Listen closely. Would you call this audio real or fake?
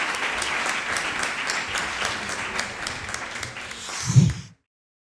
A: real